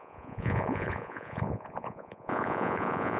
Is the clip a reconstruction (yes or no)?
yes